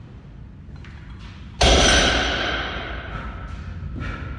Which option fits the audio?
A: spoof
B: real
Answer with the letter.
B